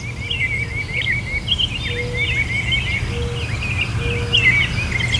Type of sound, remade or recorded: recorded